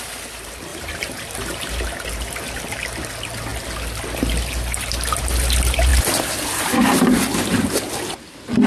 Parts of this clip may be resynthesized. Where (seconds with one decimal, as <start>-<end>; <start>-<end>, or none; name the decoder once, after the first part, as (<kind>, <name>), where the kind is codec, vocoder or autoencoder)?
0.7-1.8 (vocoder, BigVGAN v2)

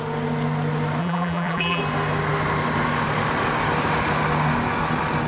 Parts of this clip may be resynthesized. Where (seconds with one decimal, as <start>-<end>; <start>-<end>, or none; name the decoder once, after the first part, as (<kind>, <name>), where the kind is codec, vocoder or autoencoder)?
1.0-1.8 (vocoder, BigVGAN v2)

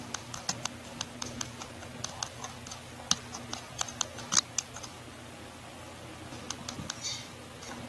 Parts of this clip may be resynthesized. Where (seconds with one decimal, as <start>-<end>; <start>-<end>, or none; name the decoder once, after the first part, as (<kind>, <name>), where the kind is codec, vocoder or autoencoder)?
none

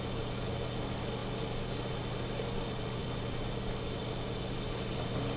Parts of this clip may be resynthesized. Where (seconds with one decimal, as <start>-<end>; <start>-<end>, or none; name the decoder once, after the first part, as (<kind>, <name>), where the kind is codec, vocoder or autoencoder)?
3.0-4.4 (vocoder, BigVGAN v2)

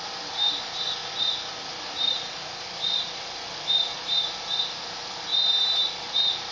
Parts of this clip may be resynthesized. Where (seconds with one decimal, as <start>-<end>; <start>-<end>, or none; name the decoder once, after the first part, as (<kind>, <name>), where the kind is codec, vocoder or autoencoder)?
none

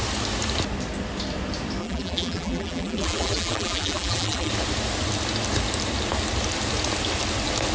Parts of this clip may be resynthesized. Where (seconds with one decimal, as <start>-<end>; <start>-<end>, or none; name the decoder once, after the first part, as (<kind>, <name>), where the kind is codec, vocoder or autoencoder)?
1.8-4.5 (vocoder, BigVGAN v2)

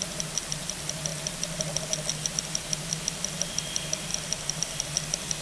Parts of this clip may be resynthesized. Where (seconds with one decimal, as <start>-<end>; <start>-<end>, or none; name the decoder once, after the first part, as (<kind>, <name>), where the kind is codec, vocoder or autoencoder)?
1.1-2.3 (vocoder, BigVGAN v2); 4.1-4.6

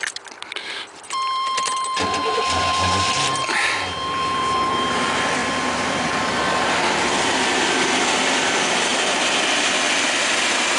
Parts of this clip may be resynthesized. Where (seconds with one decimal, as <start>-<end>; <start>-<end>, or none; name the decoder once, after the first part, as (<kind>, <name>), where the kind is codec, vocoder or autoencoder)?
0.0-5.4 (vocoder, BigVGAN v2); 7.6-8.9; 10.4-10.8